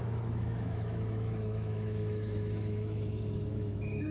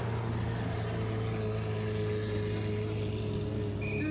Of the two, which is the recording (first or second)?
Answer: second